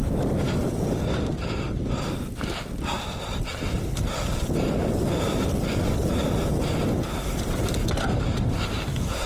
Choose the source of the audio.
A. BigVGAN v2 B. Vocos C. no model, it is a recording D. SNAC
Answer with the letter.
C